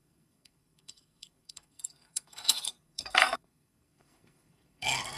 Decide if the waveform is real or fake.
fake